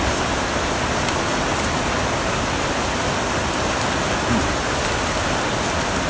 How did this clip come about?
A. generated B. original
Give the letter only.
B